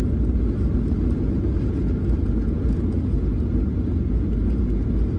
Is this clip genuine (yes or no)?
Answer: yes